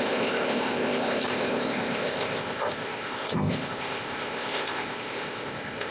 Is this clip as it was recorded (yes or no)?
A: no